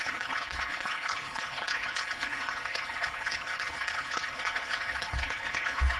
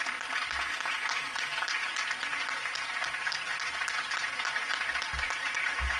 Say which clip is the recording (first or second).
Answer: second